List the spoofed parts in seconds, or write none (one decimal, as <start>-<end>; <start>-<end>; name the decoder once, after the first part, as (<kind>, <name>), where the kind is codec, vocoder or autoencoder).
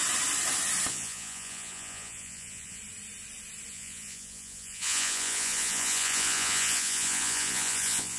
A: 0.9-2.8 (vocoder, Vocos); 3.7-8.2